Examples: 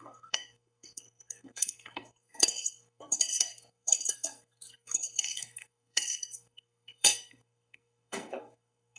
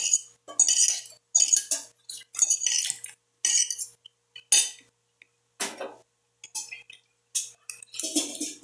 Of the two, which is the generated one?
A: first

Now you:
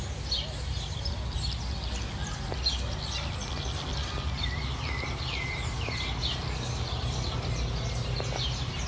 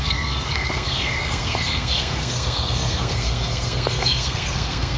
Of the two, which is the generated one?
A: second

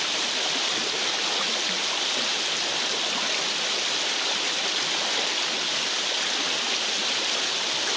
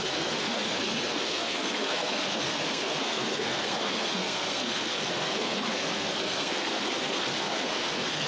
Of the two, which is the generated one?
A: second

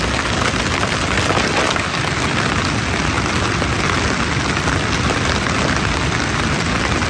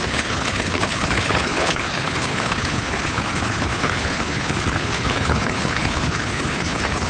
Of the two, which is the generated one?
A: second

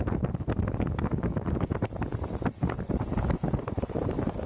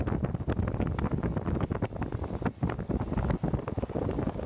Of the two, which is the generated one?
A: first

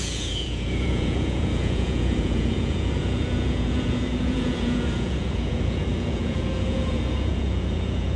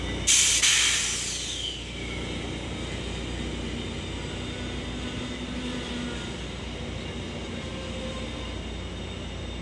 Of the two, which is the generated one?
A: first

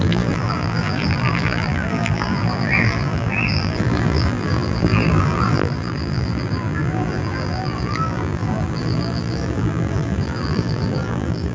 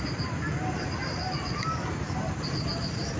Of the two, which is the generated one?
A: first